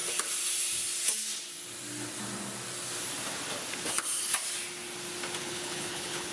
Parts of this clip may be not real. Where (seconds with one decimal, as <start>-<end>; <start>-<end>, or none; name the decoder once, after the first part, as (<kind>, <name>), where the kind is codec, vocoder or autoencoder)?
5.4-6.3 (codec, HILCodec)